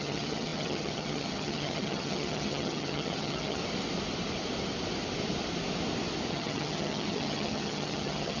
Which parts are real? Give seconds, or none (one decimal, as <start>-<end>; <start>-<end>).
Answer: 3.6-6.3